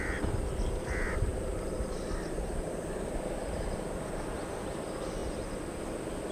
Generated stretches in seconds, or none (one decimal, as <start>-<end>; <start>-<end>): 5.2-5.8